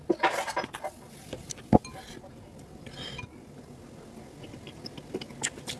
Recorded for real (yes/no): yes